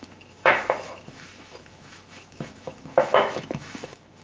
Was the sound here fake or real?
fake